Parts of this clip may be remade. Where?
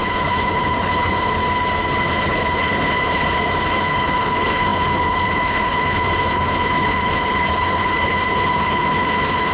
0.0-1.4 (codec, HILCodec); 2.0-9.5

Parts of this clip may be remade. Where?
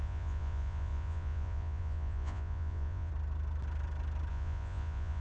0.0-3.1 (vocoder, Vocos); 4.3-5.2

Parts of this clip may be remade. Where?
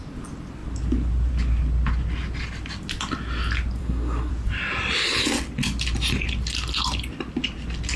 3.8-4.3 (codec, SNAC)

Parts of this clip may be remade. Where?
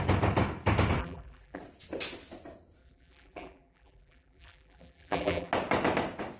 1.0-1.6 (vocoder, BigVGAN v2); 2.8-5.5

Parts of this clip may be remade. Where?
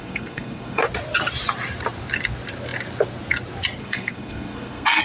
0.0-0.8 (codec, SNAC); 3.8-5.0